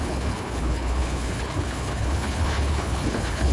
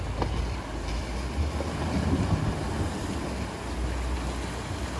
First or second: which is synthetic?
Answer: first